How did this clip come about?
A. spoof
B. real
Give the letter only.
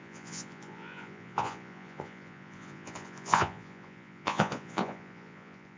A